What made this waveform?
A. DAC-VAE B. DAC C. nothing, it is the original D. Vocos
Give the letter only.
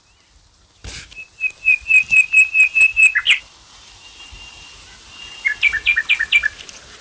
C